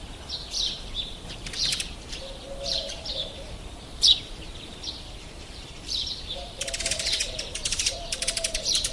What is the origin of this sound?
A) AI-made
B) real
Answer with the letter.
A